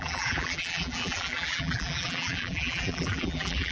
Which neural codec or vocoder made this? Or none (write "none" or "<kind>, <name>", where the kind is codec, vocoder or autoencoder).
vocoder, BigVGAN v2